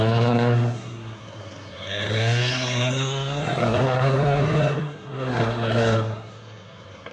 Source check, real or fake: fake